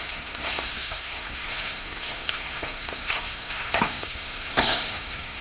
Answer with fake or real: fake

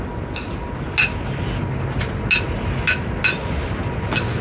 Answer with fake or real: real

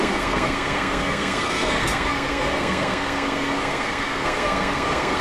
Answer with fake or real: fake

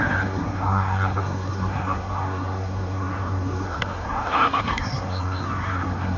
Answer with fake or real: fake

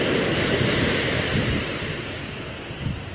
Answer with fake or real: real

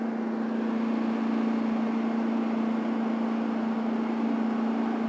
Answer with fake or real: real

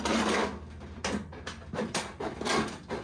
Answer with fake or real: real